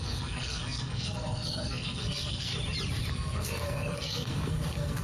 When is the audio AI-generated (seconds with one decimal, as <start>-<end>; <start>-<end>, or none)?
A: 0.0-2.5; 3.1-5.0